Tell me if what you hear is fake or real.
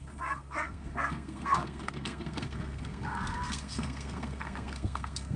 fake